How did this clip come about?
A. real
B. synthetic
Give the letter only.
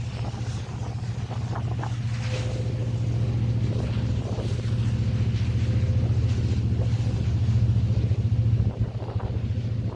A